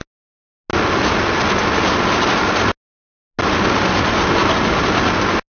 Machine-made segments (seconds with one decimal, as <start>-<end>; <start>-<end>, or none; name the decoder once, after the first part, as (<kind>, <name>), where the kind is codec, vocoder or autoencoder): none